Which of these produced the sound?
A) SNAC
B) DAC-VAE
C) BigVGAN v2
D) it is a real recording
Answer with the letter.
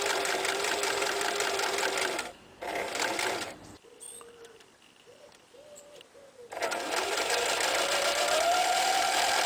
C